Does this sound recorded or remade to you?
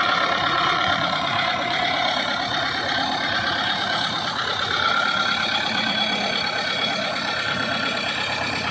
remade